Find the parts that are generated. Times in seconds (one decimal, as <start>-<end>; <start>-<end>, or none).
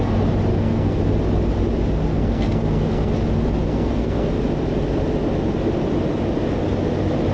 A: 0.5-1.0; 2.1-3.1; 3.6-4.3